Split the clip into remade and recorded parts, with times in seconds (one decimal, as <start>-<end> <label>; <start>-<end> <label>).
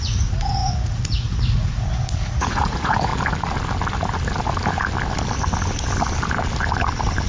0.0-3.1 remade; 3.1-7.3 recorded